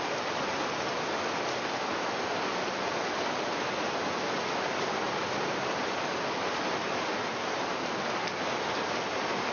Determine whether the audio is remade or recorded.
recorded